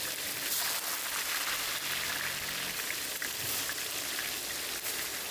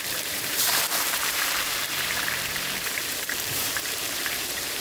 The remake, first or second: second